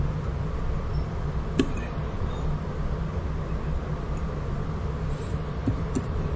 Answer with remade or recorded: recorded